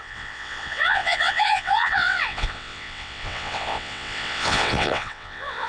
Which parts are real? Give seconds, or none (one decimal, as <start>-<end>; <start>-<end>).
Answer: none